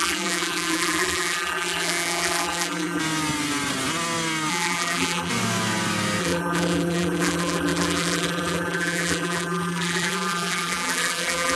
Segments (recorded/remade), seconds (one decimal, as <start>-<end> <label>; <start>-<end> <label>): 0.0-3.0 remade; 3.0-4.5 recorded; 4.5-5.3 remade; 5.3-6.2 recorded; 6.2-11.6 remade